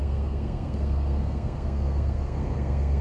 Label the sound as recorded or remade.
remade